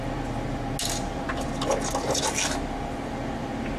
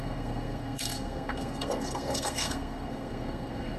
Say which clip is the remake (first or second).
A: second